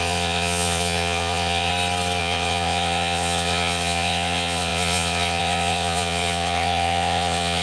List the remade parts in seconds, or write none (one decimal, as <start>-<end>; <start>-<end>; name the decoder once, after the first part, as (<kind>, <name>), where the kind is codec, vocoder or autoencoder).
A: 0.0-1.7 (vocoder, Vocos); 2.2-7.6